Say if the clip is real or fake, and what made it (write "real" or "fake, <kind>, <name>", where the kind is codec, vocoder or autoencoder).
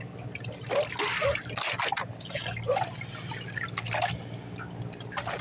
real